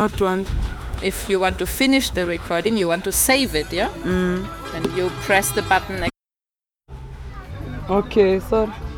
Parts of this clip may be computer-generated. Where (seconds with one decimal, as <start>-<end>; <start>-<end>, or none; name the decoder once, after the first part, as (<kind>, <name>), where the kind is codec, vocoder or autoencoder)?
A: 0.0-3.3 (autoencoder, DAC-VAE); 6.8-7.3